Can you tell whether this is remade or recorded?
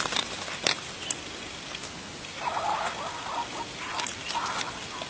recorded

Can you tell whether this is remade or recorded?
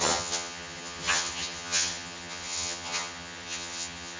remade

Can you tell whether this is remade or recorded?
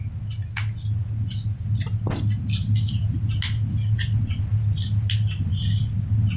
recorded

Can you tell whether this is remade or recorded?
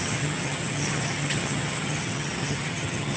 remade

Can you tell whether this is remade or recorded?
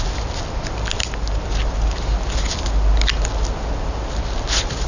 recorded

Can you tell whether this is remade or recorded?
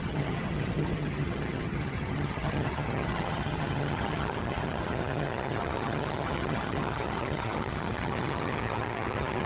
remade